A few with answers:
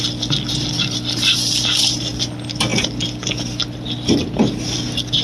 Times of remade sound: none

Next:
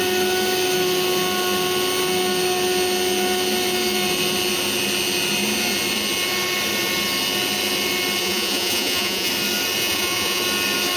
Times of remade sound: 8.2-9.3 (vocoder, Vocos); 9.8-10.4

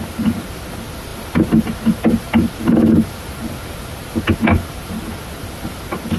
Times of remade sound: none

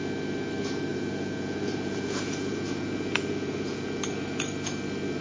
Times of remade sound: 0.9-4.0 (vocoder, Vocos)

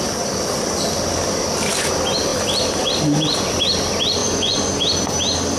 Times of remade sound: 4.2-4.7 (vocoder, Vocos)

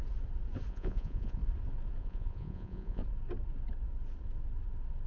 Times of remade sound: 0.7-1.4 (vocoder, Vocos); 2.0-3.0

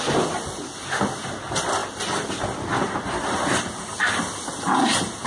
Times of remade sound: none